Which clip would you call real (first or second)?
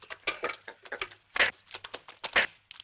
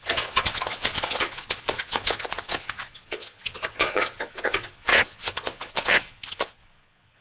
first